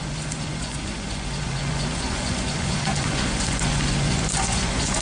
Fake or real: fake